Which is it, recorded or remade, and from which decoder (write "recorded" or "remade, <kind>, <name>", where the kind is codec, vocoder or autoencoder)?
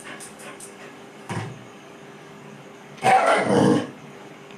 remade, codec, DAC